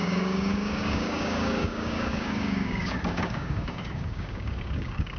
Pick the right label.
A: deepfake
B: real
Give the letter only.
A